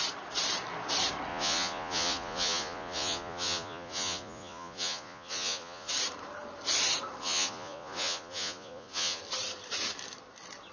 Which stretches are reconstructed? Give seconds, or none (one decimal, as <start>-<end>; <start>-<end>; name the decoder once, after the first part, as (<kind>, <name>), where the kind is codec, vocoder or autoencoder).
1.3-5.9 (vocoder, Vocos); 7.2-9.2